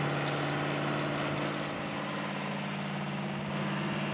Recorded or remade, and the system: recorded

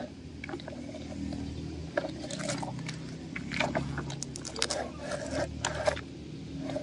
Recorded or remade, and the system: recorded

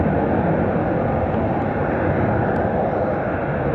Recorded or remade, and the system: recorded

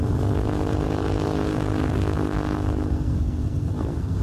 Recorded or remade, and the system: remade, codec, SNAC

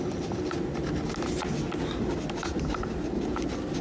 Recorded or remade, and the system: recorded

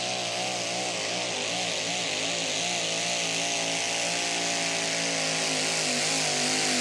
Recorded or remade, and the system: recorded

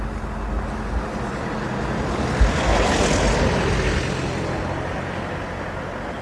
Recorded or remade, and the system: recorded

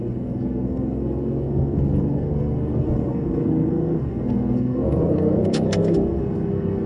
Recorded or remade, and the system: remade, codec, SNAC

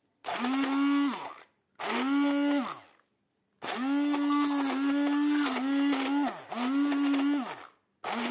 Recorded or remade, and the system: recorded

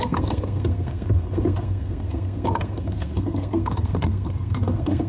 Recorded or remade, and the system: remade, codec, SNAC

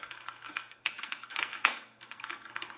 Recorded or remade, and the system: remade, codec, SNAC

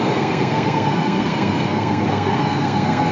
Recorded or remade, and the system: remade, codec, SNAC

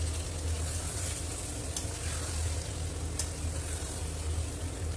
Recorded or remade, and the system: recorded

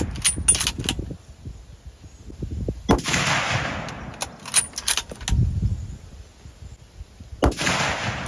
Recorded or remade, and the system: recorded